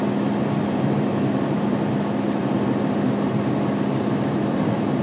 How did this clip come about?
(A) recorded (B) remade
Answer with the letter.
A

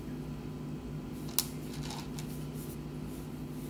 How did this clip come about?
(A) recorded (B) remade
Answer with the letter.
A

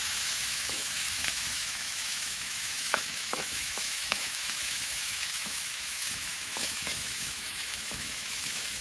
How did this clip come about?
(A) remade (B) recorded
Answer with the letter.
A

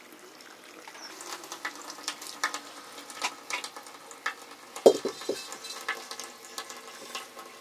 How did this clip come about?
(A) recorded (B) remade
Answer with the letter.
A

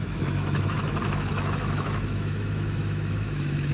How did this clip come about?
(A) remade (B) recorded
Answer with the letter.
A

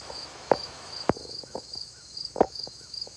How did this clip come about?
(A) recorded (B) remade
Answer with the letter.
B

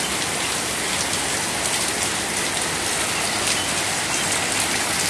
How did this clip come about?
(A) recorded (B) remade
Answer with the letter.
A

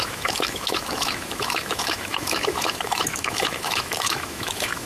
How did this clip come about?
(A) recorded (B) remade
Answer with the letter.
B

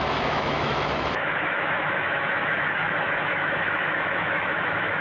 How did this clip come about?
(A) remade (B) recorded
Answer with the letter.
A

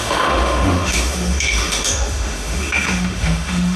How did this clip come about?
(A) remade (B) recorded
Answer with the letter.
A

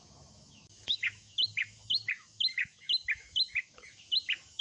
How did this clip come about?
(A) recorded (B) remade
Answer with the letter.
B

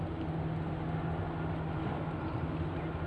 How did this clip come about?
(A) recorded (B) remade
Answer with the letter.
A